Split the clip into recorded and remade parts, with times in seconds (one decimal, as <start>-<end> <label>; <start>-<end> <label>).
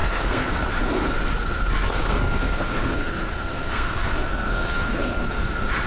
0.0-0.5 remade; 0.5-1.9 recorded; 1.9-5.4 remade; 5.4-5.9 recorded